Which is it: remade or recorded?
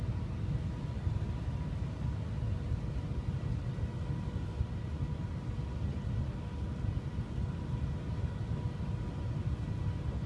recorded